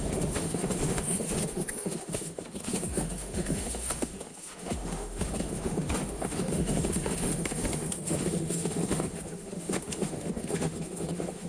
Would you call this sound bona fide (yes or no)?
no